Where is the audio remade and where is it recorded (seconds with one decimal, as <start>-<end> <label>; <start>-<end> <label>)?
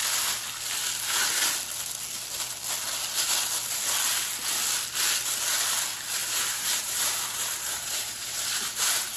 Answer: 0.0-6.2 recorded; 6.2-9.2 remade